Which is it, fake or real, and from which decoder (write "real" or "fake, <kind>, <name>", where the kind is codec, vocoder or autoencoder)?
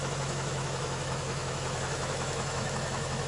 fake, autoencoder, DAC-VAE